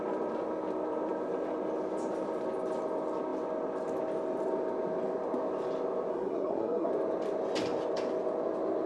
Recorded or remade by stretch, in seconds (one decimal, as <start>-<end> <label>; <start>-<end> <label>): 0.0-6.1 recorded; 6.1-6.9 remade; 6.9-8.9 recorded